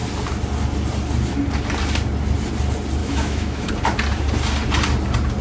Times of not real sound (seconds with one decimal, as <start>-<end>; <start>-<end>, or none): 3.0-3.7